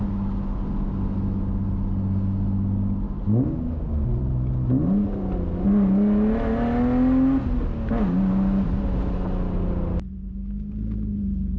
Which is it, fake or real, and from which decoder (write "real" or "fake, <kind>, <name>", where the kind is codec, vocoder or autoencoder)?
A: real